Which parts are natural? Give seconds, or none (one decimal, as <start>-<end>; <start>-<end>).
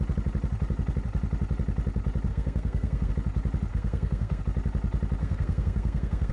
0.0-2.3; 3.1-3.7; 4.4-5.2